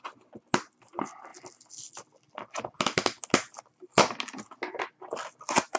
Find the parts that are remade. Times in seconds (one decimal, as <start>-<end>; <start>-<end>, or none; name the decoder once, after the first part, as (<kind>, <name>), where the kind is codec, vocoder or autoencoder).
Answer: none